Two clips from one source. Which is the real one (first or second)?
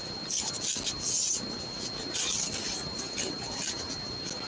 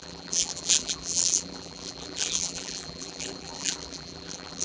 first